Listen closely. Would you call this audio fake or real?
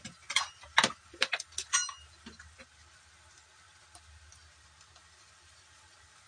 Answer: real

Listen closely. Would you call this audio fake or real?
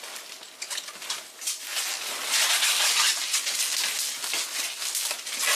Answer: real